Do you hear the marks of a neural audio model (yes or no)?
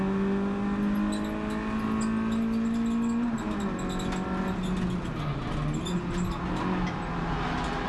no